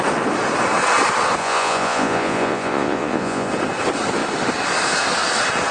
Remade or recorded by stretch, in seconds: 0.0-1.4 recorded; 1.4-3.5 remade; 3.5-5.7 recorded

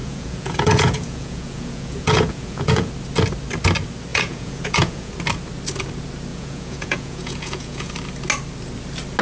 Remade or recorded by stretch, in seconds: 0.0-2.9 remade; 2.9-4.1 recorded; 4.1-5.1 remade; 5.1-6.3 recorded; 6.3-7.9 remade; 7.9-9.2 recorded

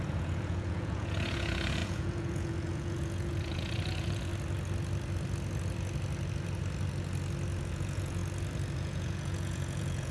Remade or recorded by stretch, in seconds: 0.0-4.3 remade; 4.3-7.7 recorded; 7.7-8.2 remade; 8.2-8.8 recorded; 8.8-10.1 remade